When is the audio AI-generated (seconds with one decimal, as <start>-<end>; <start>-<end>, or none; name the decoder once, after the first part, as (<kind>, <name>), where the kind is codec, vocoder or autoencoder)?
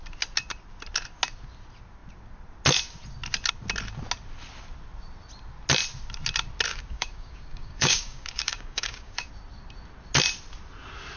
6.7-9.3 (codec, DAC)